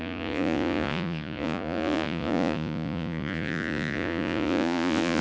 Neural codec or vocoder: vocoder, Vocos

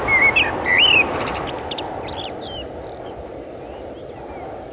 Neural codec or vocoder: none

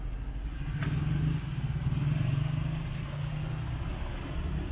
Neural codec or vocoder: none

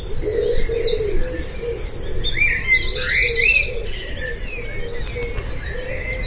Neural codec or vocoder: none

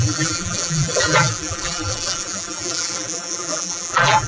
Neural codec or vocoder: vocoder, BigVGAN v2